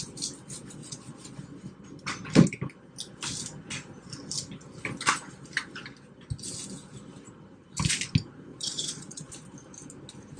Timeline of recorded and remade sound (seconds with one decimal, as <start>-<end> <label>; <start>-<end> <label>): 0.0-0.8 recorded; 0.8-1.4 remade; 1.4-8.5 recorded; 8.5-9.3 remade; 9.3-10.4 recorded